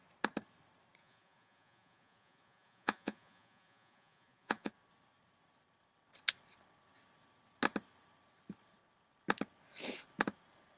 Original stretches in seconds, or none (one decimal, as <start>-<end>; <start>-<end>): 0.0-1.0; 4.7-10.8